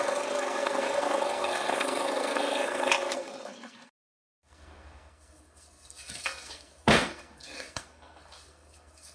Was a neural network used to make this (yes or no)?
yes